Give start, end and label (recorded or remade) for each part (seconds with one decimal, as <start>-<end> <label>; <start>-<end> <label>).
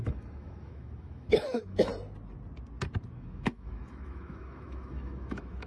0.0-1.9 remade; 1.9-3.1 recorded; 3.1-5.7 remade